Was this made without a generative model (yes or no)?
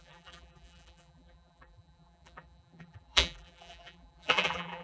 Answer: no